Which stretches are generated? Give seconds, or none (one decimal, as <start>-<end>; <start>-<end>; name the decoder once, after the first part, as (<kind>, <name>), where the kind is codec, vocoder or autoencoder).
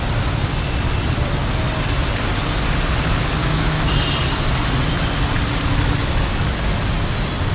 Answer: 3.4-3.9 (autoencoder, DAC-VAE)